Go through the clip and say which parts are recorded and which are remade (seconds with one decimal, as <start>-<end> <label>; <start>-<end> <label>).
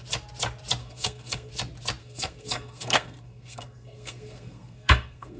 0.0-0.8 recorded; 0.8-1.5 remade; 1.5-2.0 recorded; 2.0-5.4 remade